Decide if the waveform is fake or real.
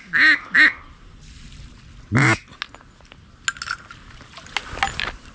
real